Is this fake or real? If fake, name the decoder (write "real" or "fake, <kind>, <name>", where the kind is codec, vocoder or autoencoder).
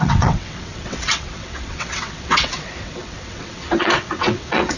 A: fake, vocoder, WaveNeXt